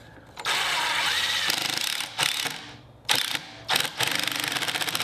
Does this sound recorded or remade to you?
recorded